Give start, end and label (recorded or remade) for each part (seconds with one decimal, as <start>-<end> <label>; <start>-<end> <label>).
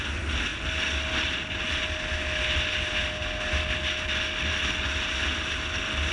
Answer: 0.0-6.1 recorded